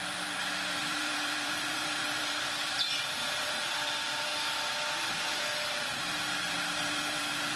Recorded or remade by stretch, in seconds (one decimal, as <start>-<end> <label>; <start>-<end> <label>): 0.0-4.3 remade; 4.3-5.7 recorded; 5.7-7.6 remade